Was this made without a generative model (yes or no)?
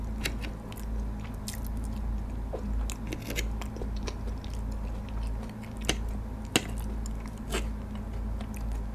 yes